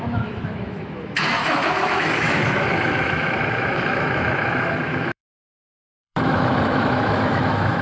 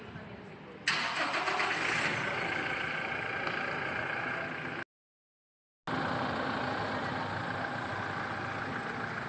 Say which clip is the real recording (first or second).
second